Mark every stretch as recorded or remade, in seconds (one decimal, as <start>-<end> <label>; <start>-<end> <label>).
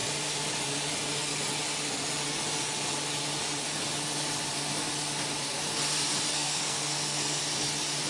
0.0-6.3 recorded; 6.3-7.4 remade; 7.4-8.1 recorded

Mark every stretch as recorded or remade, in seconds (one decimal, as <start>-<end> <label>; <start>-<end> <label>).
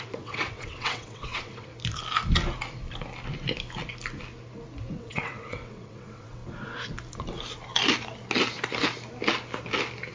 0.0-1.7 remade; 1.7-5.0 recorded; 5.0-6.4 remade; 6.4-10.1 recorded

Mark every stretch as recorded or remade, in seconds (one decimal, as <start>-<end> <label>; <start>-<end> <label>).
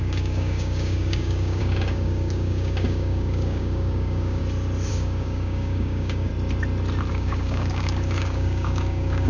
0.0-4.4 remade; 4.4-4.9 recorded; 4.9-6.3 remade; 6.3-7.1 recorded; 7.1-9.3 remade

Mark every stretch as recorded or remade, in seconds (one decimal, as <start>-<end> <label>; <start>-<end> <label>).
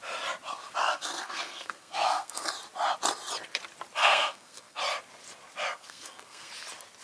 0.0-0.8 recorded; 0.8-2.5 remade; 2.5-4.0 recorded; 4.0-4.8 remade; 4.8-5.7 recorded; 5.7-6.5 remade; 6.5-7.0 recorded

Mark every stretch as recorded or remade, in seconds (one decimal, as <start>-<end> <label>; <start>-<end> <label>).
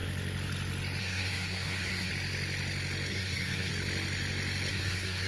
0.0-1.0 recorded; 1.0-2.1 remade; 2.1-3.1 recorded; 3.1-3.7 remade; 3.7-4.7 recorded; 4.7-5.3 remade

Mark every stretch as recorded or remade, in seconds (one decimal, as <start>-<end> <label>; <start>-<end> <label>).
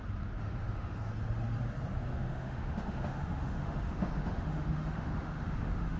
0.0-0.4 recorded; 0.4-1.1 remade; 1.1-2.1 recorded; 2.1-6.0 remade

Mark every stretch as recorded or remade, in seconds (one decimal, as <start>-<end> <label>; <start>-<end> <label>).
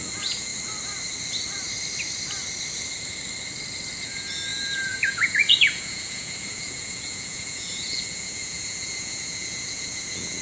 0.0-0.5 remade; 0.5-4.0 recorded; 4.0-10.4 remade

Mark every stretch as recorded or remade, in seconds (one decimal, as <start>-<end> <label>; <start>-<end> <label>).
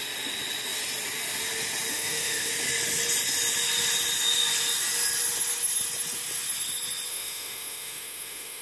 0.0-1.9 recorded; 1.9-2.5 remade; 2.5-7.1 recorded; 7.1-8.6 remade